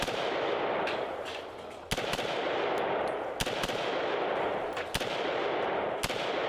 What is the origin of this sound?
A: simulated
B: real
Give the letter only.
B